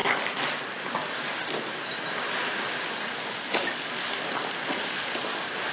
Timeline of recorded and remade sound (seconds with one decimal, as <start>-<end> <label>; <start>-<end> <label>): 0.0-5.7 recorded